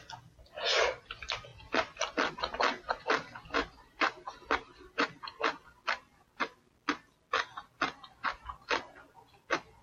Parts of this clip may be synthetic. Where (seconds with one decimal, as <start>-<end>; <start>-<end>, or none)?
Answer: 1.5-2.1; 3.6-5.2